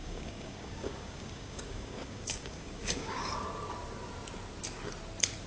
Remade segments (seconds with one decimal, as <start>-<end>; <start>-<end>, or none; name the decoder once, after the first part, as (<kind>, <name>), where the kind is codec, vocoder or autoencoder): 0.0-3.3 (codec, DAC)